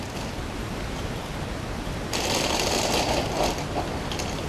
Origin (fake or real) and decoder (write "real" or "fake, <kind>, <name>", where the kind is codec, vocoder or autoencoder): real